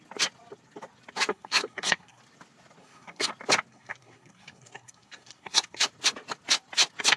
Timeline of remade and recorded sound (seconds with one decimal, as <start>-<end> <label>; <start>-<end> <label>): 0.0-1.3 recorded; 1.3-2.2 remade; 2.2-2.8 recorded; 2.8-3.3 remade; 3.3-3.7 recorded; 3.7-5.8 remade; 5.8-7.2 recorded